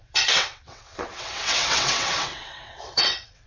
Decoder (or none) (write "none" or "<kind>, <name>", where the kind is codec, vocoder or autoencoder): vocoder, WaveNeXt